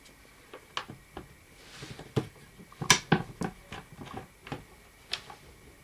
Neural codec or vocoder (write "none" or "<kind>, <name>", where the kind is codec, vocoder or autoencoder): none